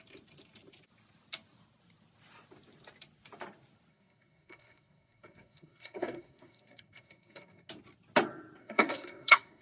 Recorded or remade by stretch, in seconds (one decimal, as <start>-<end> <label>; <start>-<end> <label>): 0.0-3.9 recorded; 3.9-7.7 remade; 7.7-8.6 recorded; 8.6-9.6 remade